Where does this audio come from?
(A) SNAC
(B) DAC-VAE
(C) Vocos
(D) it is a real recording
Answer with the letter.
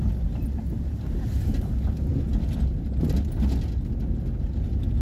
D